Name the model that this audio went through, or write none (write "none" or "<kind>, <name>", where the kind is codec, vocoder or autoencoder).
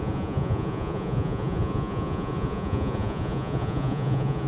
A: vocoder, Vocos